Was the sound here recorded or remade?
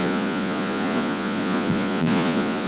remade